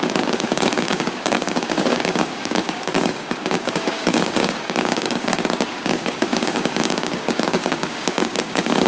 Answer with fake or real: fake